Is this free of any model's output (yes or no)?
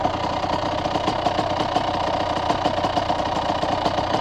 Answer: yes